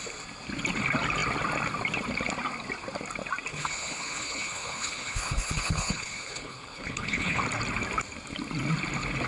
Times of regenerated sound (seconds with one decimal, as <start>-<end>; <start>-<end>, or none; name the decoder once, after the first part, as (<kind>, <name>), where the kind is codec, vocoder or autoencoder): 3.5-7.4 (codec, HILCodec)